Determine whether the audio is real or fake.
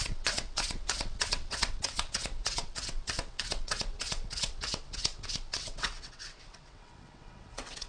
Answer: fake